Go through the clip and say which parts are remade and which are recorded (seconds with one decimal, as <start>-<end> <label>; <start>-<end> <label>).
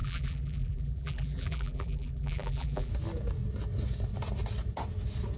0.0-2.9 remade; 2.9-5.4 recorded